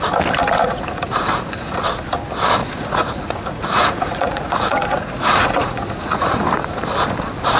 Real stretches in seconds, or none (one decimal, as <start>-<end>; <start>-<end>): 0.0-0.6; 1.8-2.6; 6.8-7.6